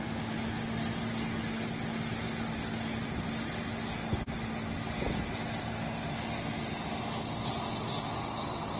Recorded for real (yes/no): yes